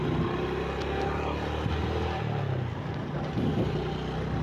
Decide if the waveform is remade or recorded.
recorded